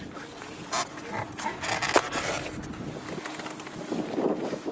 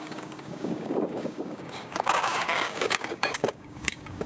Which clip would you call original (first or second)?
first